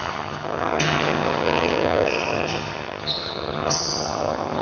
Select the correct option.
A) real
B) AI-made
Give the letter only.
B